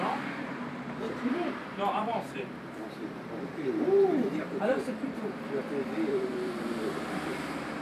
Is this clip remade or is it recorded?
remade